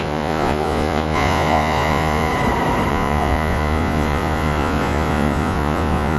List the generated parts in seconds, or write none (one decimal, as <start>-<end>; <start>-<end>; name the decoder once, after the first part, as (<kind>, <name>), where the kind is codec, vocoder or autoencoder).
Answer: 0.0-2.3 (vocoder, Vocos); 2.9-6.2

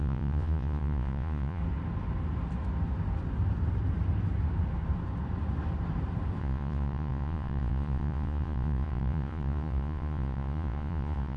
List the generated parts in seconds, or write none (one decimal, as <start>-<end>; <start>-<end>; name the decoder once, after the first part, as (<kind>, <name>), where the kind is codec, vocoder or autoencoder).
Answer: 0.0-1.6 (vocoder, Vocos); 6.4-11.4

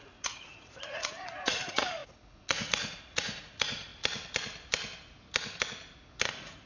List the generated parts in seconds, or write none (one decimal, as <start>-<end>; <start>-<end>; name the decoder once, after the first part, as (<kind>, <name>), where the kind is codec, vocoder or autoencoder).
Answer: 0.0-3.9 (vocoder, Vocos); 6.3-6.7

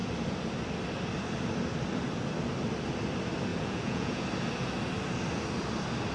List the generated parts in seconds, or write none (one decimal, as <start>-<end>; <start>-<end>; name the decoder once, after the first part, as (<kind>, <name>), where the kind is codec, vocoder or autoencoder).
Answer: 3.5-4.2 (vocoder, Vocos)

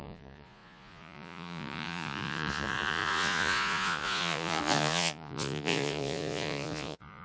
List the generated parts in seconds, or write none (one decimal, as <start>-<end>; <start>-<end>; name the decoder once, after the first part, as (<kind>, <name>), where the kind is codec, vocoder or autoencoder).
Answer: 0.0-7.2 (vocoder, Vocos)

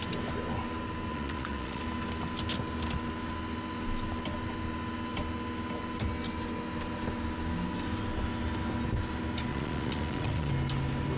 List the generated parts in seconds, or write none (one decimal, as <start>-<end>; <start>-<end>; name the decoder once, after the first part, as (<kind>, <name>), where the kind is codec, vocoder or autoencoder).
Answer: 1.1-1.8 (vocoder, Vocos); 9.5-10.5